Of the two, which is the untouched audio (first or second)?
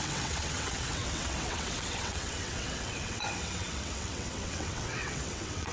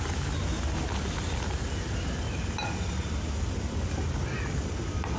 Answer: second